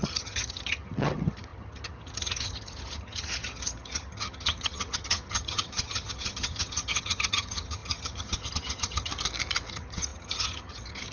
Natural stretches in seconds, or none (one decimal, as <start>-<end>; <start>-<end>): 9.1-9.7